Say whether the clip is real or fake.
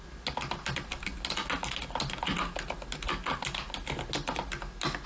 real